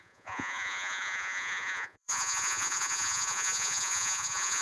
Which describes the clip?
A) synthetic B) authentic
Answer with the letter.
A